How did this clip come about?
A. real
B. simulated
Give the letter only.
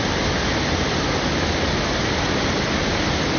A